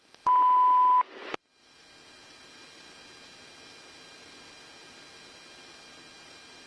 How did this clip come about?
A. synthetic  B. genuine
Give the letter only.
B